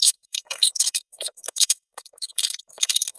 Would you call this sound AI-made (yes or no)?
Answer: yes